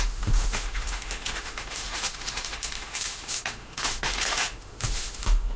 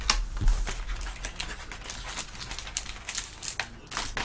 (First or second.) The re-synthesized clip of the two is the first